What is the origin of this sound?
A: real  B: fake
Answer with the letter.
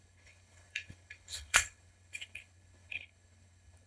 B